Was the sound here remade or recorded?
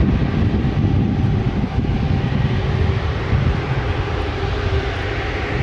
recorded